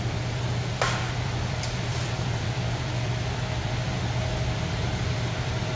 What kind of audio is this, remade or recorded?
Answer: remade